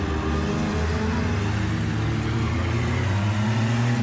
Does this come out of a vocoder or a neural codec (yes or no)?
no